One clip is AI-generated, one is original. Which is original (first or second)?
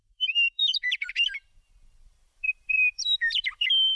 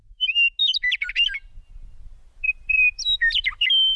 second